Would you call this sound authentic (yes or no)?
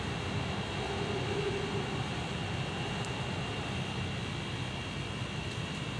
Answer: yes